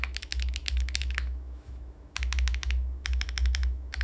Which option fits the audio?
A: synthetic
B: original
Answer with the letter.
A